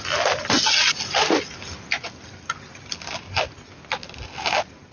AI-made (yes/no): no